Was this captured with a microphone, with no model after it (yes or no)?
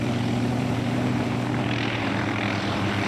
no